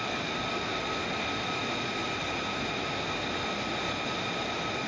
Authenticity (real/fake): real